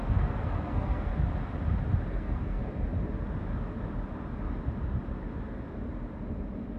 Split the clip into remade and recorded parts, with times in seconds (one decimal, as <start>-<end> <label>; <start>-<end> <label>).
0.0-1.1 remade; 1.1-2.1 recorded; 2.1-2.6 remade; 2.6-6.8 recorded